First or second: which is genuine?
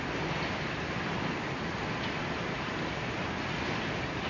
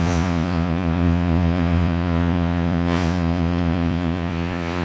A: first